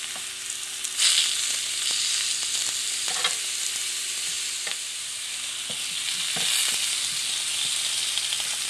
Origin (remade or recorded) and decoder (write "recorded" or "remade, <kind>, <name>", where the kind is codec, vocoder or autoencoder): recorded